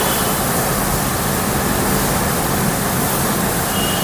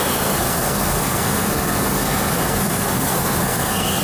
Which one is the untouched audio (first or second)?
first